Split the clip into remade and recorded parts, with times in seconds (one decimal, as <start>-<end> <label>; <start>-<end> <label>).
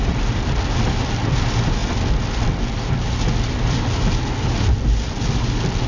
0.0-5.9 recorded